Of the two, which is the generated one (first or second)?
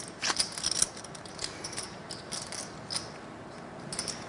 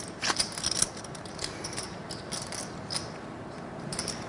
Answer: second